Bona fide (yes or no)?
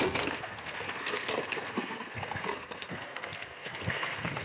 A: no